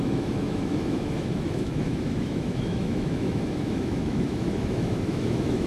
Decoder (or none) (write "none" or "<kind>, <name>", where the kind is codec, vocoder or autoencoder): autoencoder, DAC-VAE